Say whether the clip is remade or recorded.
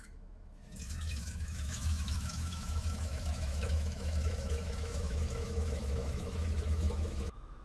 remade